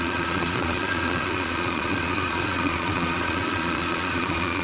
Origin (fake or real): fake